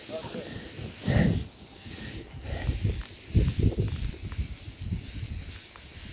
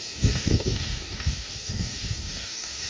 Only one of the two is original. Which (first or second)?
first